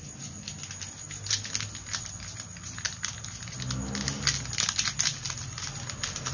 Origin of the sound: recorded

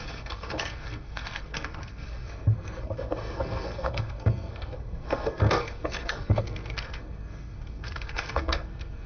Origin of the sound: remade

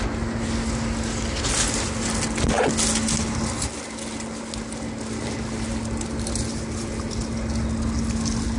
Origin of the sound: recorded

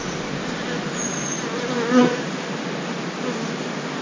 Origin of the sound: recorded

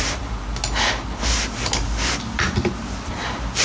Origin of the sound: recorded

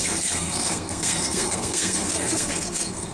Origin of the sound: remade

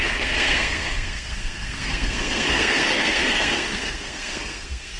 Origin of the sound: remade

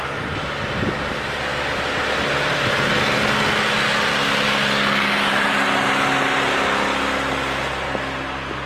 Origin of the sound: recorded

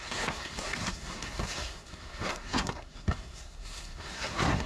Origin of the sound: remade